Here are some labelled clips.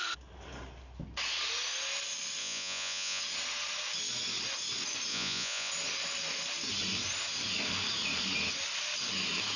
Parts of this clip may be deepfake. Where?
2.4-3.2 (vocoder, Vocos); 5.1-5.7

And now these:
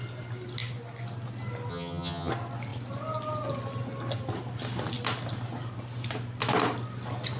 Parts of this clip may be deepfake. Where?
1.7-2.3 (vocoder, HiFi-GAN)